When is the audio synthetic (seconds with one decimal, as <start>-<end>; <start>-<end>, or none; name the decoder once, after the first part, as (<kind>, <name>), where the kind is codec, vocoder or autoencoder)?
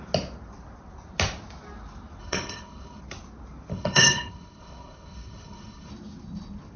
2.2-3.0 (codec, HILCodec); 3.7-5.9